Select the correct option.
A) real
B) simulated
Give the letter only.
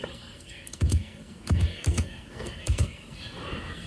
B